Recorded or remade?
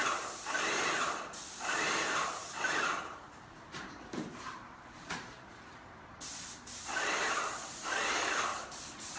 remade